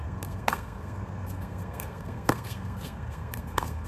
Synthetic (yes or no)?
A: yes